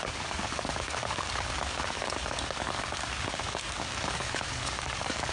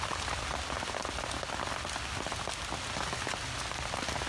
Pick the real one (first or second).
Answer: second